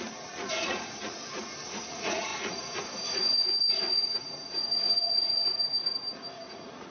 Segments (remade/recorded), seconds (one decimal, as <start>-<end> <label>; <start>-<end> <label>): 0.0-6.9 remade